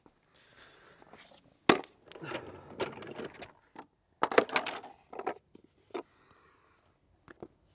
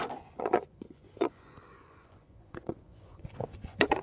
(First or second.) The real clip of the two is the first